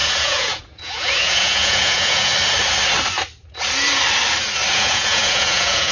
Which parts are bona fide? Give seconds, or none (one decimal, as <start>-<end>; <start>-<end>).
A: 2.3-4.7